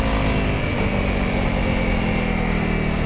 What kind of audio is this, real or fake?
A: real